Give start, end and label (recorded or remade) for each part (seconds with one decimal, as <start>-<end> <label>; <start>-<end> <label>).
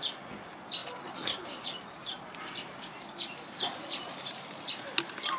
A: 0.0-5.4 recorded